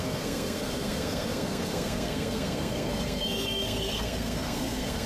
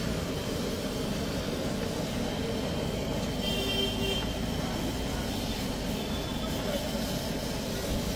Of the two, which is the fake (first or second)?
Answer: first